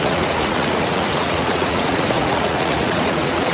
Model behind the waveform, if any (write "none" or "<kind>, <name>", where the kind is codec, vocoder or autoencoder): vocoder, Vocos